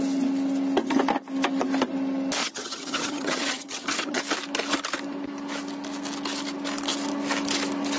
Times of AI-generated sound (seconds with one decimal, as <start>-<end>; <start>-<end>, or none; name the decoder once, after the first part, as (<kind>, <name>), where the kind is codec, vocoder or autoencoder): 2.4-4.2 (vocoder, HiFi-GAN)